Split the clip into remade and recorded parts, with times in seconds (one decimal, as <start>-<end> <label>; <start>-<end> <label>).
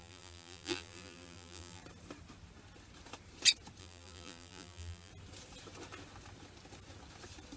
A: 0.0-1.8 remade; 1.8-3.8 recorded; 3.8-5.1 remade; 5.1-7.6 recorded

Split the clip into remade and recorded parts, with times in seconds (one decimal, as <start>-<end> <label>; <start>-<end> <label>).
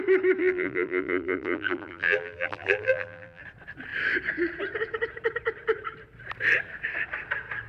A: 0.0-0.4 recorded; 0.4-3.4 remade; 3.4-7.7 recorded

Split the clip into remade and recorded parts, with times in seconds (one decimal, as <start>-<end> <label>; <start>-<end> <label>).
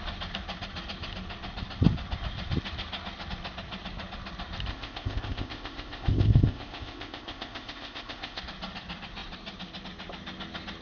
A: 0.0-4.7 recorded; 4.7-8.4 remade; 8.4-10.8 recorded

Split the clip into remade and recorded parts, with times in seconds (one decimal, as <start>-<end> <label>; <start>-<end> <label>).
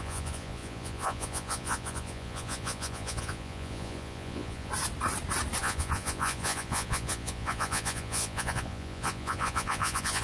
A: 0.0-4.7 remade; 4.7-5.6 recorded; 5.6-10.2 remade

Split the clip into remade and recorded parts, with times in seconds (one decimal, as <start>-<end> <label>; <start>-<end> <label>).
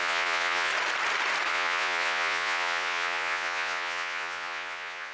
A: 0.0-0.7 remade; 0.7-1.5 recorded; 1.5-5.1 remade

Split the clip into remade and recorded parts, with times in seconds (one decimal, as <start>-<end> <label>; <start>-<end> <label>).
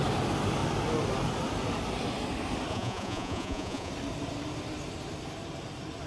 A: 0.0-2.7 recorded; 2.7-3.9 remade; 3.9-6.1 recorded